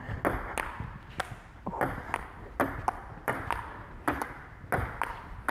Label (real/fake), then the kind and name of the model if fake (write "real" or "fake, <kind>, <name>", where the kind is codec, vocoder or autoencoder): real